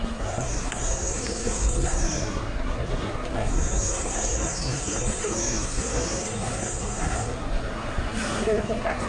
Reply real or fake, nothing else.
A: fake